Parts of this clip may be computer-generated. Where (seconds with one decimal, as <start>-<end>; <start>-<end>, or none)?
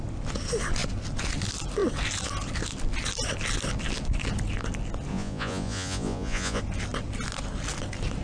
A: 5.1-6.6